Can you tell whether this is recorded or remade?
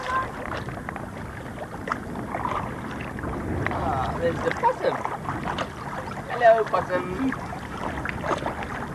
recorded